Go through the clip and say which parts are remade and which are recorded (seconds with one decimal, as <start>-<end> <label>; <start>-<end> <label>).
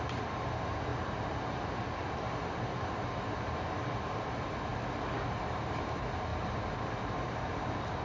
0.0-4.7 remade; 4.7-5.3 recorded; 5.3-8.0 remade